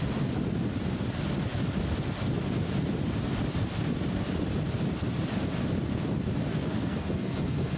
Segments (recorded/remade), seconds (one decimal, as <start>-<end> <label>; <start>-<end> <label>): 0.0-6.5 recorded; 6.5-7.8 remade